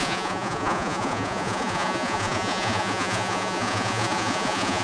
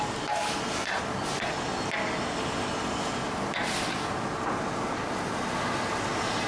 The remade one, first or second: first